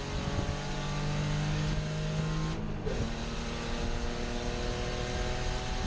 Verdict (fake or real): real